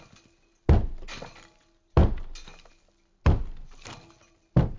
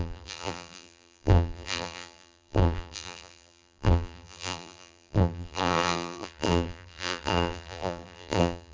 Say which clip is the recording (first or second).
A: first